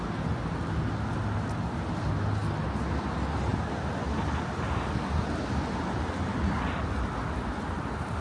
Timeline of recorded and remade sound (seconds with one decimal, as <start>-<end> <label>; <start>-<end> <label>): 0.0-8.2 recorded